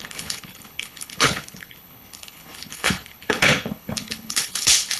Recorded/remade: remade